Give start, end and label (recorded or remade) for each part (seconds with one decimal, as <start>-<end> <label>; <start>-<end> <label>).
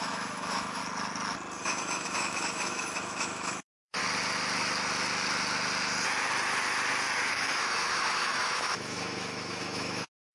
0.0-0.8 remade; 0.8-1.6 recorded; 1.6-4.0 remade; 4.0-7.3 recorded; 7.3-10.3 remade